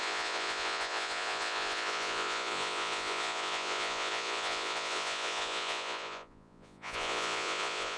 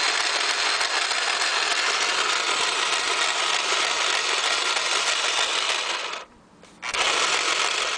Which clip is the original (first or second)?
second